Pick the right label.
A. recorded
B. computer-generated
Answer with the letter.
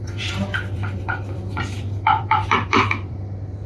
B